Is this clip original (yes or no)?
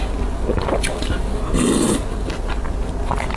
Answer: yes